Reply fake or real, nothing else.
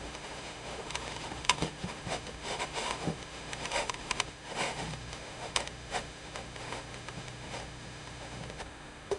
fake